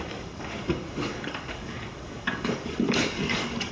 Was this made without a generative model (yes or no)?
no